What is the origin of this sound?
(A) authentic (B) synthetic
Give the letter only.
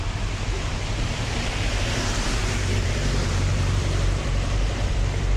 B